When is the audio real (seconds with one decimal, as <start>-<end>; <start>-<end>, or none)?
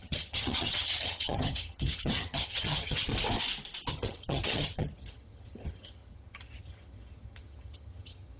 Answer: 3.1-3.9